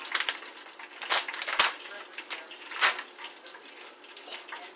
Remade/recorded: recorded